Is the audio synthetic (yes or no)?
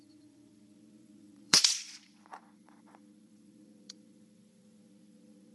yes